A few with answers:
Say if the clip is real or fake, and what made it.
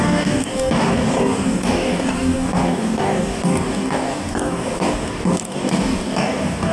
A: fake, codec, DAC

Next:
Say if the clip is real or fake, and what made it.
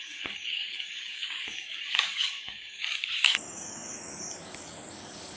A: fake, codec, DAC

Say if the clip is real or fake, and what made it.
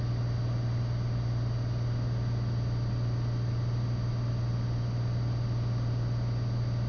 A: real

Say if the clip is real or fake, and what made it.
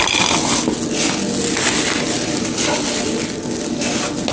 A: real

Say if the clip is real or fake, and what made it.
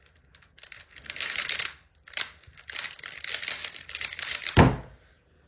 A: real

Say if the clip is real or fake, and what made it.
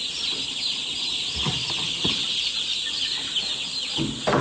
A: real